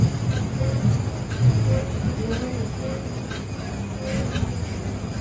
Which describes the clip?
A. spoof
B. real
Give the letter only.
B